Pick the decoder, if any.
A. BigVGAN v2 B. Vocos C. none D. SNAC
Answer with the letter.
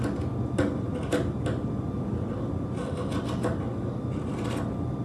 C